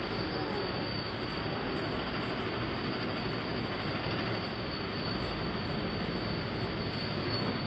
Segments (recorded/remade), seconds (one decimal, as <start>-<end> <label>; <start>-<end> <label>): 0.0-7.7 recorded